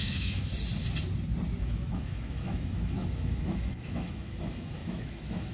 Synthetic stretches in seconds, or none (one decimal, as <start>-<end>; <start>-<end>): 0.0-0.5; 1.6-5.5